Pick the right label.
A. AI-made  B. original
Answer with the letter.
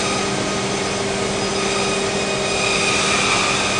B